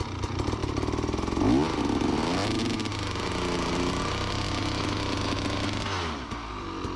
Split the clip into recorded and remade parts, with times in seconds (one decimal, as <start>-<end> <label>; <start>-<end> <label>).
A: 0.0-7.0 recorded